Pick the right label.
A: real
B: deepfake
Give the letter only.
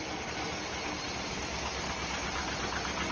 A